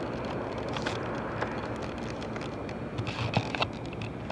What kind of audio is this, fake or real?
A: real